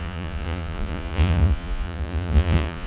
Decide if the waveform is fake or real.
fake